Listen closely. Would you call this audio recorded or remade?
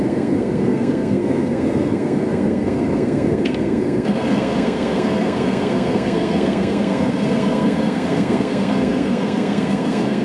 remade